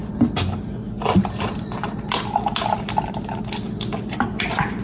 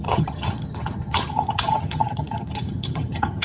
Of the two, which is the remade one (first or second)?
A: second